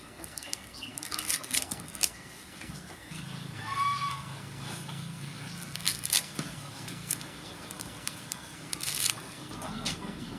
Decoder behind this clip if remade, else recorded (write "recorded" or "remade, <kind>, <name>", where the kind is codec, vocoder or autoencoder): remade, codec, SNAC